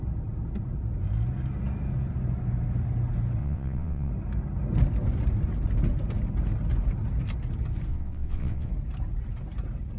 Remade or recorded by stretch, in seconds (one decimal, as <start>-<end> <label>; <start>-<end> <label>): 0.0-3.4 recorded; 3.4-4.1 remade; 4.1-7.9 recorded; 7.9-8.7 remade; 8.7-10.0 recorded